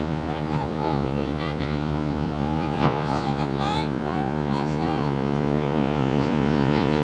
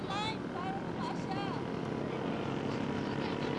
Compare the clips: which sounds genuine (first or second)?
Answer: second